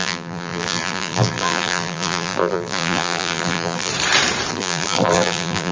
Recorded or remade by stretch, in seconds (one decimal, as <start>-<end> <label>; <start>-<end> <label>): 0.0-3.9 remade; 3.9-4.5 recorded; 4.5-5.7 remade